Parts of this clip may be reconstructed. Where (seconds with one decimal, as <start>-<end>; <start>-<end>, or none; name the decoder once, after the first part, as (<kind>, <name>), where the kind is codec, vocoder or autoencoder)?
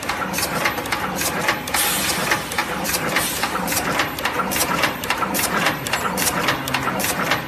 2.6-6.4 (vocoder, BigVGAN v2)